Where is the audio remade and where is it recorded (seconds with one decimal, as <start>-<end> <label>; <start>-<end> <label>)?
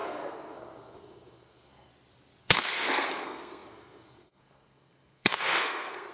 0.0-1.9 remade; 1.9-2.4 recorded; 2.4-6.1 remade